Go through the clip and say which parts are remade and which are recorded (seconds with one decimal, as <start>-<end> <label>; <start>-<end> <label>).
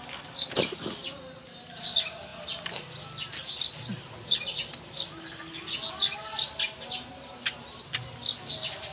0.0-8.9 recorded